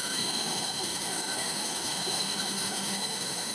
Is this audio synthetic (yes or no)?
yes